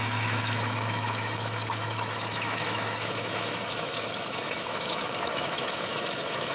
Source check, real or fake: fake